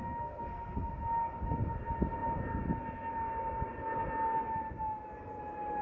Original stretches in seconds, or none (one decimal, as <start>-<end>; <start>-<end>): 0.9-5.8